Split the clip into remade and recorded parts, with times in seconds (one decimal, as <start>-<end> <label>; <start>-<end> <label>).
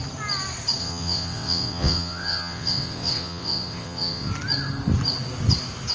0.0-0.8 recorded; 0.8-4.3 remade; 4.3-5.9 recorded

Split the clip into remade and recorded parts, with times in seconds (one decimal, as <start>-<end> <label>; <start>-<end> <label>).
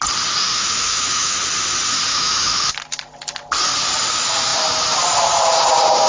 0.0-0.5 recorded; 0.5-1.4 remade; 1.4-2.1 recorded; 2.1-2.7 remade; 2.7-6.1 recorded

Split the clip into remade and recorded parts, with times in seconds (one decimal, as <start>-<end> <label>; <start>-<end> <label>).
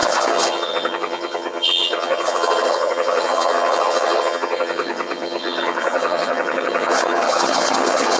0.0-8.2 remade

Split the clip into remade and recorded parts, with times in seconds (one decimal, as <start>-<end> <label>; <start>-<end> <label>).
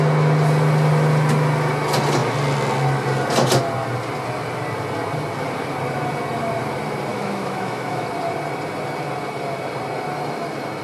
0.0-7.1 recorded; 7.1-8.1 remade; 8.1-10.8 recorded